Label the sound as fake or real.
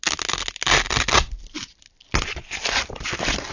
real